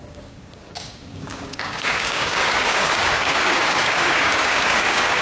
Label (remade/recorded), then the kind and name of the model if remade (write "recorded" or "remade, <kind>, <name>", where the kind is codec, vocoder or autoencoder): remade, codec, DAC